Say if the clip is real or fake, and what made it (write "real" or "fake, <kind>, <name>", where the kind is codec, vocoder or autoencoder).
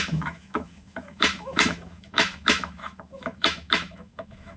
fake, autoencoder, DAC-VAE